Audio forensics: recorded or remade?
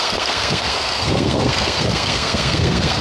remade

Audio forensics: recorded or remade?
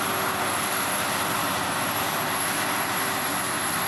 recorded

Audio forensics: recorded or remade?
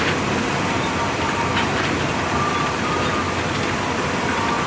recorded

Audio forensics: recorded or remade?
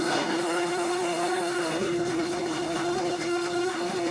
remade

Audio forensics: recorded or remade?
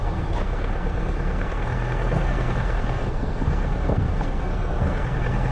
remade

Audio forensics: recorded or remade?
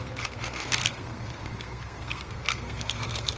remade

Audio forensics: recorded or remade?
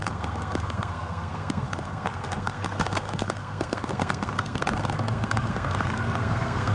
remade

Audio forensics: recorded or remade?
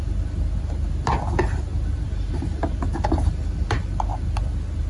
recorded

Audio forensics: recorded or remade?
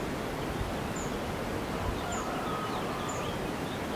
recorded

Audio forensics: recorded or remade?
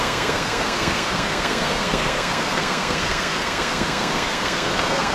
remade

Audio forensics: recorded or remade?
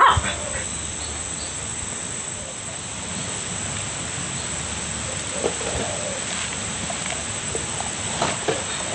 recorded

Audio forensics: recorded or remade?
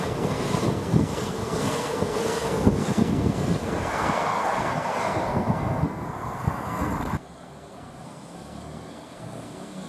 remade